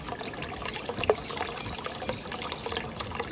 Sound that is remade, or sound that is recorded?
recorded